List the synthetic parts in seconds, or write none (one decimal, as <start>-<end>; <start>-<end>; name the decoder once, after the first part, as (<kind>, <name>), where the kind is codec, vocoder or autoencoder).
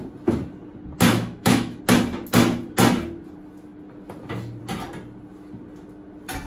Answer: 1.1-1.8 (autoencoder, DAC-VAE)